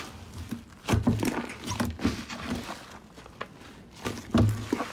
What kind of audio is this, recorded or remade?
recorded